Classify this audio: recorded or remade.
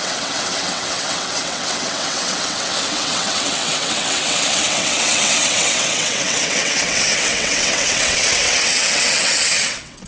remade